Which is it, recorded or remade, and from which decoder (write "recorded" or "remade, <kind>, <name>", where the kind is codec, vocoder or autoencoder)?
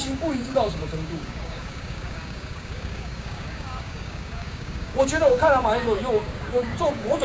remade, codec, DAC